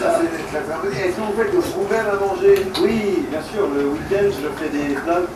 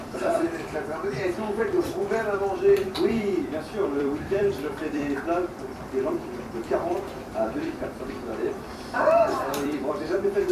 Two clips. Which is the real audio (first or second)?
first